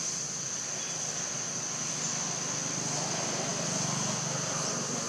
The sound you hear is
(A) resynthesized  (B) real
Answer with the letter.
B